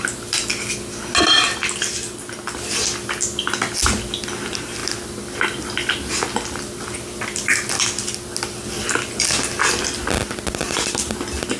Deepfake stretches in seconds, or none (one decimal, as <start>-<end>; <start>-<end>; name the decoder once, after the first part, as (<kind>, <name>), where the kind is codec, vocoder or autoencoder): none